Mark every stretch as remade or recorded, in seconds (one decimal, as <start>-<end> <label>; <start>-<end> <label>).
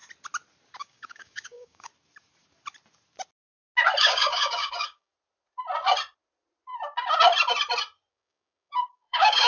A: 0.0-0.8 recorded; 0.8-1.9 remade; 1.9-4.0 recorded; 4.0-5.1 remade; 5.1-8.1 recorded; 8.1-9.5 remade